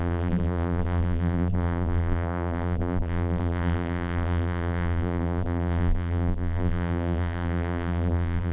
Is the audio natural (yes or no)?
no